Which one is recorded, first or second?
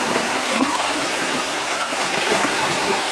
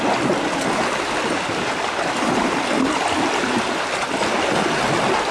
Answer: second